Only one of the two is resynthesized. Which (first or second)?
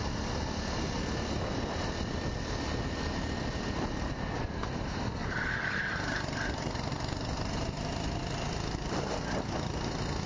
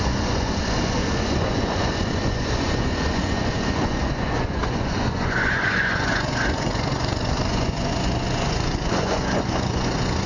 second